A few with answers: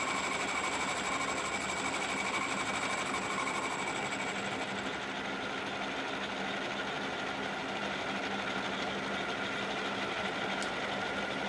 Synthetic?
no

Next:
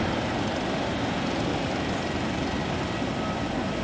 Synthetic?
no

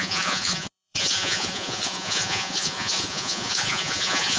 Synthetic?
yes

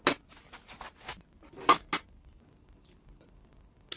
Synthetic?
no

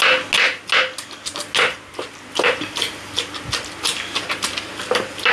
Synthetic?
no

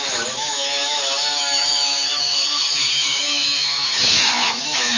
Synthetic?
yes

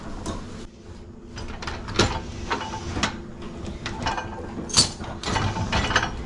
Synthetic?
no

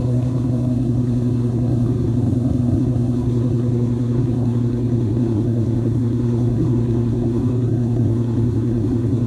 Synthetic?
yes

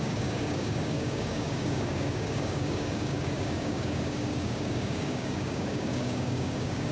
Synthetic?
yes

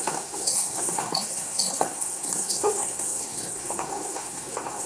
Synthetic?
yes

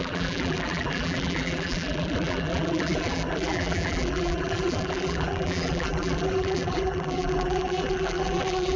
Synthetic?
yes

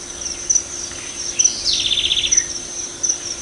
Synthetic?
no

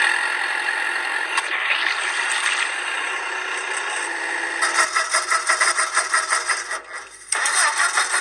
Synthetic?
no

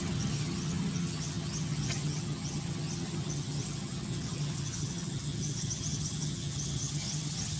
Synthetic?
yes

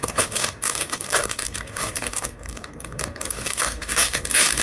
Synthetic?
yes